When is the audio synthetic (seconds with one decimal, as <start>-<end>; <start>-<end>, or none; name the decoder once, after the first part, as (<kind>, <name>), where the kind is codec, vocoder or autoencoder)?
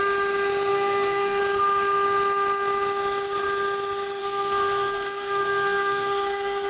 0.7-1.4 (codec, SNAC); 4.2-6.7